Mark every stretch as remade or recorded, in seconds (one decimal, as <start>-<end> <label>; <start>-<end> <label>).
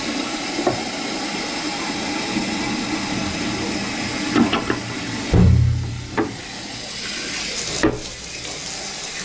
0.0-9.2 recorded